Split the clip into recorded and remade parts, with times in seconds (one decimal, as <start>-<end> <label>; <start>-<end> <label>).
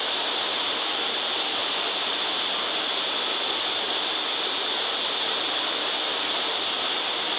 0.0-7.4 recorded